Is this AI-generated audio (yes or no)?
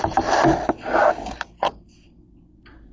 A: no